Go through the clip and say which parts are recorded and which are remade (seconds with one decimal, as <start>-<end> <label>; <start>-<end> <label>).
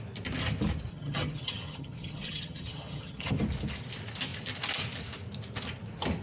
0.0-0.9 recorded; 0.9-3.3 remade; 3.3-6.2 recorded